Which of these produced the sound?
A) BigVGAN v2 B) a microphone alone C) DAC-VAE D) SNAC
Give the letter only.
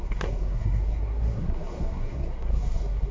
D